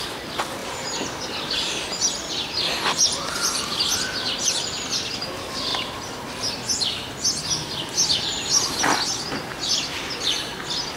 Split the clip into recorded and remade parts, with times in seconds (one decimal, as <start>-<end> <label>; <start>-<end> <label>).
0.0-0.6 recorded; 0.6-4.9 remade; 4.9-5.7 recorded; 5.7-6.5 remade; 6.5-11.0 recorded